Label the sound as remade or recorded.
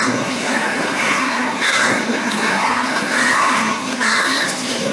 remade